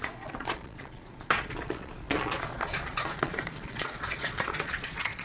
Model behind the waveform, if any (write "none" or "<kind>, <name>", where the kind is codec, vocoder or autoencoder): vocoder, Vocos